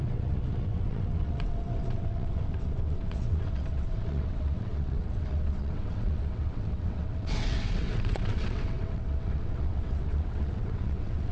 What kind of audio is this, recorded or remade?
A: remade